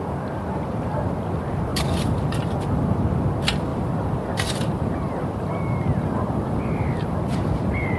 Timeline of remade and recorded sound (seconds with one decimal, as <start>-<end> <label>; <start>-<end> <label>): 0.0-1.7 recorded; 1.7-2.5 remade; 2.5-3.7 recorded; 3.7-7.2 remade; 7.2-8.0 recorded